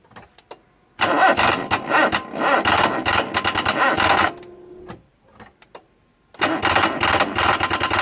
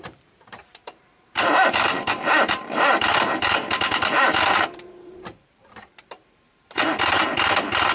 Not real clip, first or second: second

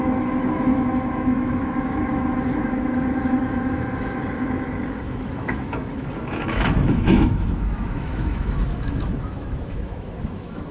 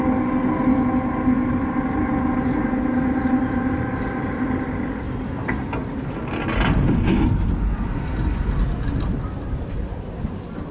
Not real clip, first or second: first